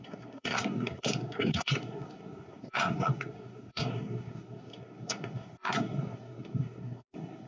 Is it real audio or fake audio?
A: fake